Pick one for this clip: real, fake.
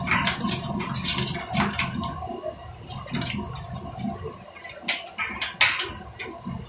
real